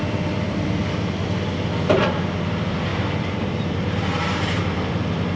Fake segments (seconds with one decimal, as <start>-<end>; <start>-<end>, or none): 0.0-0.8; 2.0-5.4